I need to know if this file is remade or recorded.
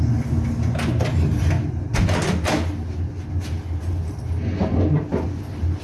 recorded